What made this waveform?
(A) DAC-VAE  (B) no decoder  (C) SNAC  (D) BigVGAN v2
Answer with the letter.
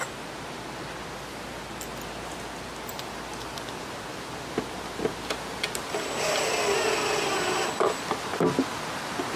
B